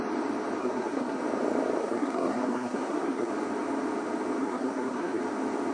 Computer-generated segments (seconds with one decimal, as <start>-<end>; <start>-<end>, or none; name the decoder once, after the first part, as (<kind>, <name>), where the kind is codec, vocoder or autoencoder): 0.6-1.2 (codec, SNAC); 1.8-3.3; 4.4-5.2